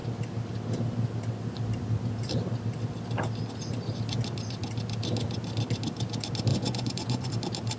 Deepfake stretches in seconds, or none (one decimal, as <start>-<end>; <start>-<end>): 6.5-7.3